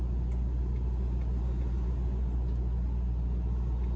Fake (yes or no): no